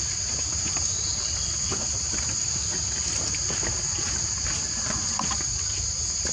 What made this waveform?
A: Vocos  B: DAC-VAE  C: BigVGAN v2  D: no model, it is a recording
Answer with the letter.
D